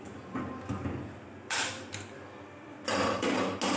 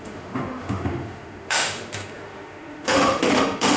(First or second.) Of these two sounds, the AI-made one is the second